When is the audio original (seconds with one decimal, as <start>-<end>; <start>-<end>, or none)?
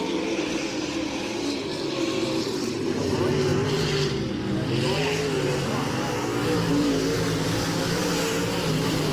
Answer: 0.0-9.1